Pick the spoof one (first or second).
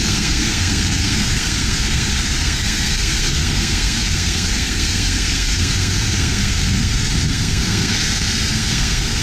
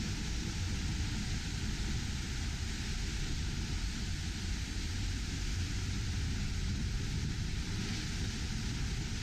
first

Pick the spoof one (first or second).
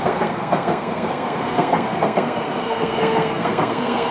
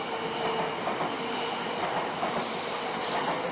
first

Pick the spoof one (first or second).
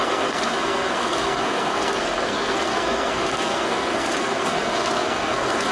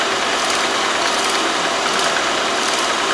first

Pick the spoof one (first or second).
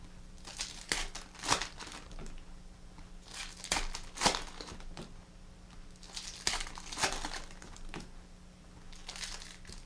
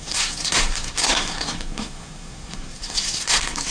second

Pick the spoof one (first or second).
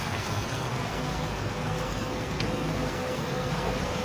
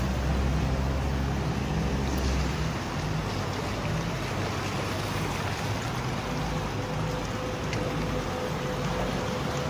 first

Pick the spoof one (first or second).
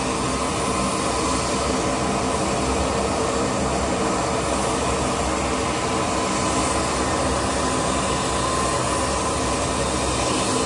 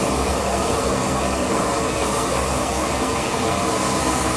second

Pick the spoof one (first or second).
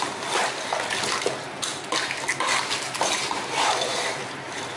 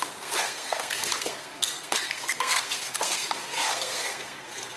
second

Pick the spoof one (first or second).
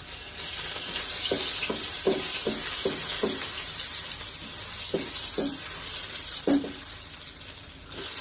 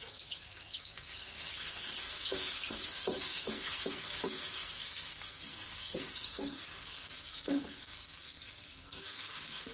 second